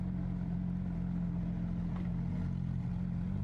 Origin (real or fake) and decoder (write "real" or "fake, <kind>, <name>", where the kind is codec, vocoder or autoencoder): real